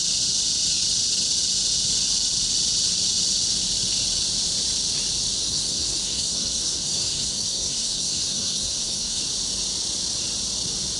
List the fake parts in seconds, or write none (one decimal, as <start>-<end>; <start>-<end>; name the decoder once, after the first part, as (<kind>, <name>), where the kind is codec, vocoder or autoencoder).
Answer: 5.4-9.2 (codec, SNAC)